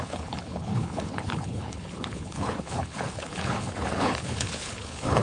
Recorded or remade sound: remade